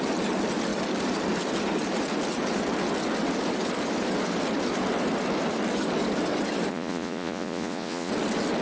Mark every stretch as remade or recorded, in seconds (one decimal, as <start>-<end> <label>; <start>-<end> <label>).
0.0-6.7 recorded; 6.7-8.1 remade; 8.1-8.6 recorded